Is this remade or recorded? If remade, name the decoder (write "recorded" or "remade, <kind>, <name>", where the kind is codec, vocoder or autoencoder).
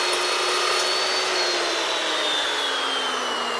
recorded